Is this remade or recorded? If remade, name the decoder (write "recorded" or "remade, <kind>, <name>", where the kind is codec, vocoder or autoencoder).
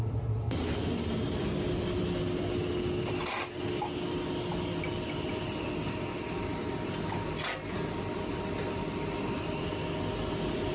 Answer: recorded